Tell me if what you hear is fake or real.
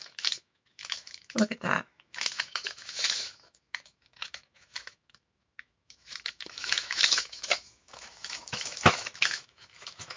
fake